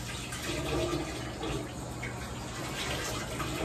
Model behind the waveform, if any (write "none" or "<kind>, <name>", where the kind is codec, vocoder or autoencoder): none